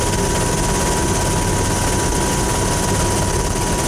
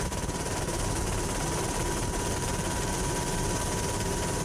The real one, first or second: first